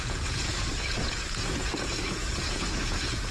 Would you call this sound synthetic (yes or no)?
yes